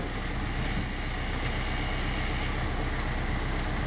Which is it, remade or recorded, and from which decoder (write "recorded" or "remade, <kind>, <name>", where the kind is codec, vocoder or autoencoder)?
recorded